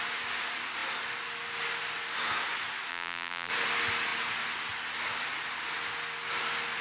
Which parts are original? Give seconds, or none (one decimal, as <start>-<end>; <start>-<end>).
0.0-2.9; 3.5-6.8